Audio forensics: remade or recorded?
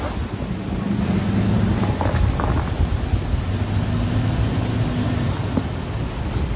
recorded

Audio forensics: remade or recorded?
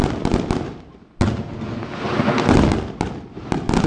recorded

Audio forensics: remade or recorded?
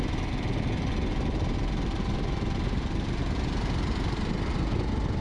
recorded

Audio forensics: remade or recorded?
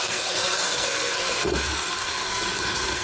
remade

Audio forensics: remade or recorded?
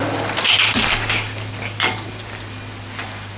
recorded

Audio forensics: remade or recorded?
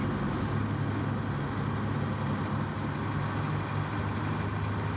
recorded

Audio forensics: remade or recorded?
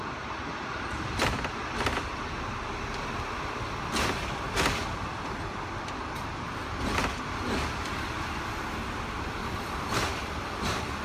recorded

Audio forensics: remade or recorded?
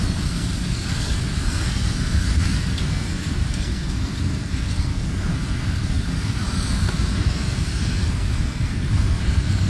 remade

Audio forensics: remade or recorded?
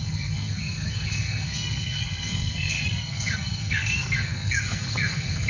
remade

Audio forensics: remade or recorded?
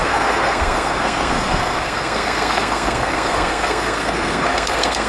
remade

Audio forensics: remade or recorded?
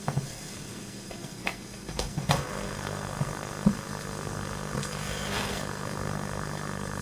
remade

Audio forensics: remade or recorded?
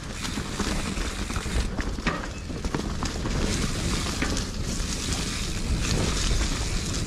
recorded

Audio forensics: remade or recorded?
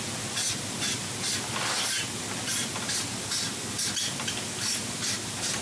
recorded